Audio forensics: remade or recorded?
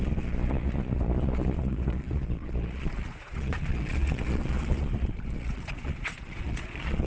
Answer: remade